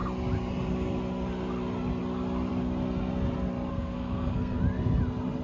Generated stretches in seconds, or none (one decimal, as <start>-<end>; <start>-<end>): 3.7-4.6